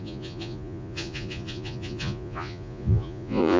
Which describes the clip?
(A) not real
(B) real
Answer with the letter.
A